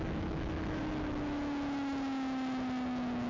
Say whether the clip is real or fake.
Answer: fake